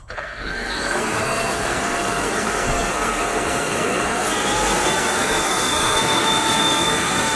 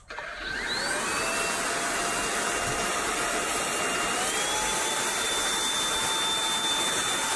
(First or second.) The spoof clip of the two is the first